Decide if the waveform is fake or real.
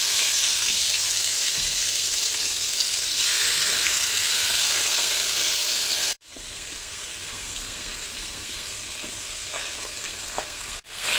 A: fake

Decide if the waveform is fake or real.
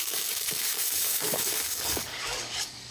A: fake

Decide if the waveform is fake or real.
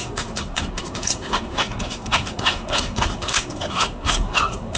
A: fake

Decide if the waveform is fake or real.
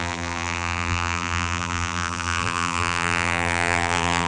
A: fake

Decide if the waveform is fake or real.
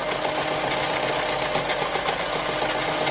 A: real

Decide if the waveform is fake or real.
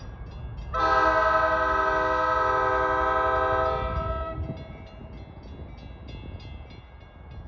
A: real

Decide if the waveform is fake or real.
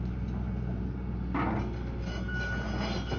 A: real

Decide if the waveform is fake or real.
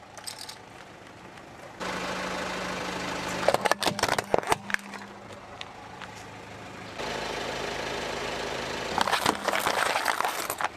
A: real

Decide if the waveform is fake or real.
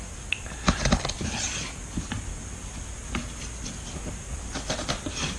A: real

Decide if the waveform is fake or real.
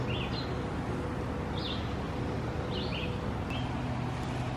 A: real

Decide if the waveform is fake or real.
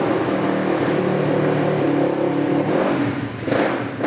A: real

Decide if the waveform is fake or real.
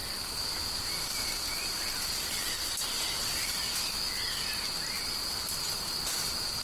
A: real